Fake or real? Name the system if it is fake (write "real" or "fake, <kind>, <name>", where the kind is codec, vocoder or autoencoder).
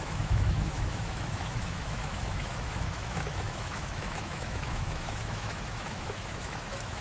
fake, autoencoder, DAC-VAE